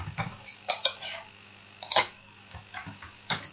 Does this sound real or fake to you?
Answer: fake